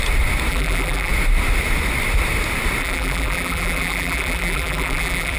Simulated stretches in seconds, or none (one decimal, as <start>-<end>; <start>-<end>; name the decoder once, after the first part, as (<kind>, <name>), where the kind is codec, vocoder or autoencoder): 0.5-1.1 (vocoder, BigVGAN v2); 2.8-5.4